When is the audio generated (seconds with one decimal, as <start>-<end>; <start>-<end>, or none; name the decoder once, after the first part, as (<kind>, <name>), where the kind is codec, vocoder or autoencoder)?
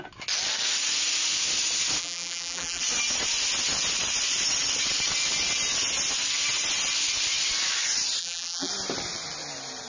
2.0-2.8 (vocoder, BigVGAN v2); 8.2-8.7